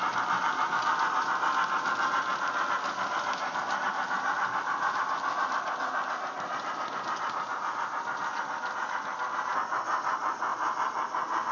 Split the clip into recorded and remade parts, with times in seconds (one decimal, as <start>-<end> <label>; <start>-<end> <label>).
0.0-11.5 recorded

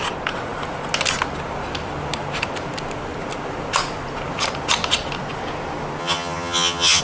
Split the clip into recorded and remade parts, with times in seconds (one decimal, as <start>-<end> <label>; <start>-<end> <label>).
0.0-6.0 recorded; 6.0-7.0 remade

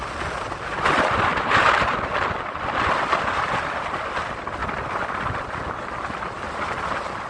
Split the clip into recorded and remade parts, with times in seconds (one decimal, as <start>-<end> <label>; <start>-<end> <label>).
0.0-1.3 recorded; 1.3-2.0 remade; 2.0-7.3 recorded

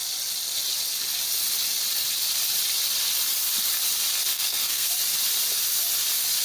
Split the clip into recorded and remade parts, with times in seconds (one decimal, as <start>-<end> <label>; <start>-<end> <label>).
0.0-4.3 recorded; 4.3-4.9 remade; 4.9-6.4 recorded

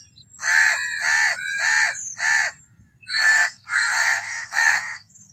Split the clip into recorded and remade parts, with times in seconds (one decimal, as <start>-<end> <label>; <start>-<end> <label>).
0.0-3.1 recorded; 3.1-5.3 remade